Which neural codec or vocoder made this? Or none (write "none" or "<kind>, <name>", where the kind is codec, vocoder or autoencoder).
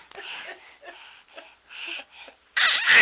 none